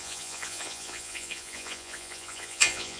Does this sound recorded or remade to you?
remade